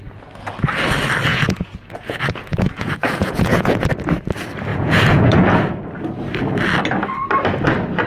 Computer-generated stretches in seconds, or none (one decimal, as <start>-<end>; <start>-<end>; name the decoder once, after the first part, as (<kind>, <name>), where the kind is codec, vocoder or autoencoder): 1.3-3.9 (vocoder, Vocos); 4.7-5.8